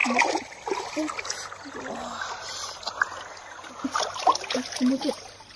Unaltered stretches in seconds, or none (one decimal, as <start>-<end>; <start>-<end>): 0.0-5.6